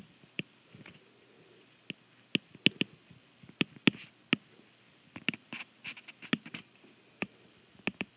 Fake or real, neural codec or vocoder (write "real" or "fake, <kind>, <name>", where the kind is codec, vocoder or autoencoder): real